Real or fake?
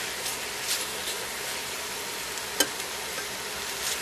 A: real